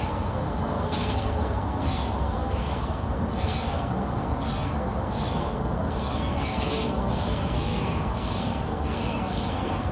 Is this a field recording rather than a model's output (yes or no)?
no